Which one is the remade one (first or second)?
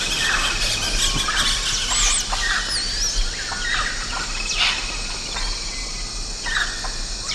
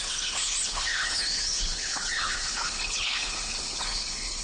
second